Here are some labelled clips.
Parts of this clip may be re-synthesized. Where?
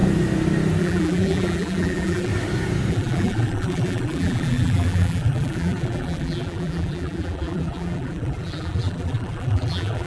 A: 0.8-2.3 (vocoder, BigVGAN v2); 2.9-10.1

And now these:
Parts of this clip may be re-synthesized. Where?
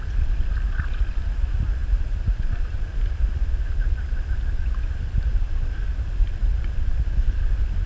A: 1.8-2.9 (vocoder, BigVGAN v2); 5.3-5.9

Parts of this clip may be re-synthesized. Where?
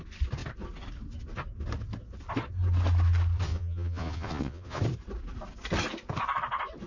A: 3.5-4.8 (vocoder, Vocos)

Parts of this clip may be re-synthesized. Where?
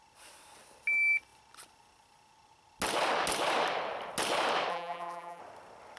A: 4.7-5.4 (vocoder, BigVGAN v2)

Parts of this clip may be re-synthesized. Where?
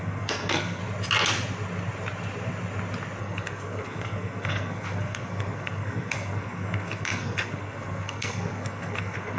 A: 0.0-0.8 (codec, SNAC); 3.2-9.4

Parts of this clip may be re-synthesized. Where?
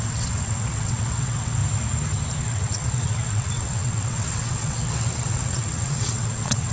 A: 0.0-1.6 (vocoder, WaveNeXt); 2.4-6.7